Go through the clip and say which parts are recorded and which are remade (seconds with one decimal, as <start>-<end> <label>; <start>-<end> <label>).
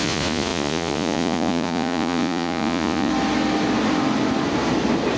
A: 0.0-3.1 remade; 3.1-5.2 recorded